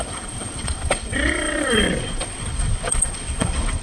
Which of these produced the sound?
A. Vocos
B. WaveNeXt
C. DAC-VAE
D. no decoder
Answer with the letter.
B